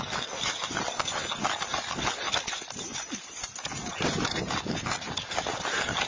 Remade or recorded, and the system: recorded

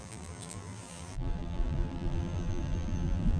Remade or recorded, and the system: remade, vocoder, BigVGAN v2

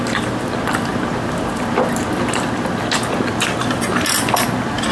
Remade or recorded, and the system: recorded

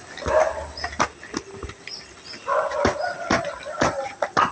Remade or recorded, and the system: recorded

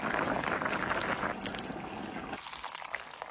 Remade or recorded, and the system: recorded